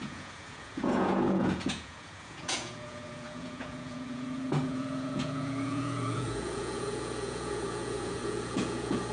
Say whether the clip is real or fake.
fake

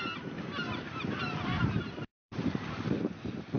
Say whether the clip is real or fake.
fake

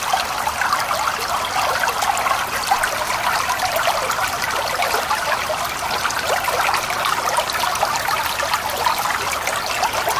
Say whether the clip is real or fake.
real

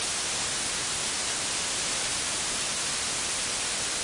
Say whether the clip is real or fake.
real